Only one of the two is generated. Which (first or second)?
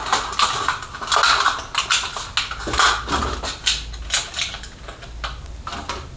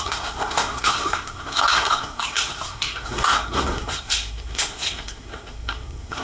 second